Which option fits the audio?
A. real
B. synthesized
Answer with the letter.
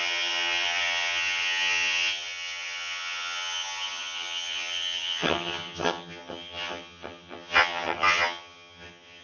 B